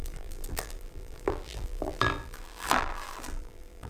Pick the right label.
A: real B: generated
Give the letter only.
B